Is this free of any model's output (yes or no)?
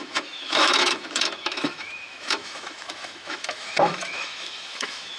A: no